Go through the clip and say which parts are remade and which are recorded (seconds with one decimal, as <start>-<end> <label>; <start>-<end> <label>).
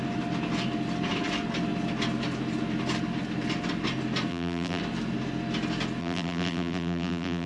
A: 0.0-4.3 recorded; 4.3-4.8 remade; 4.8-6.0 recorded; 6.0-7.5 remade